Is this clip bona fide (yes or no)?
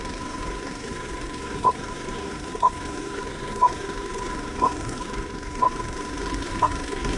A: no